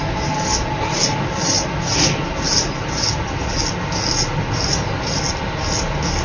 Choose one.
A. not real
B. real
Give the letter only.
B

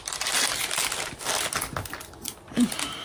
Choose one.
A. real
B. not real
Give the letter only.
A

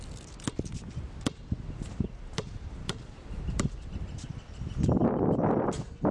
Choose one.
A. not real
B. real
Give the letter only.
B